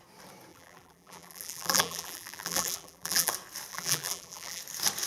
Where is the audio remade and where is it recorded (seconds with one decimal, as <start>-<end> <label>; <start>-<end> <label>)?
0.0-0.5 recorded; 0.5-3.3 remade; 3.3-3.7 recorded; 3.7-4.6 remade; 4.6-5.1 recorded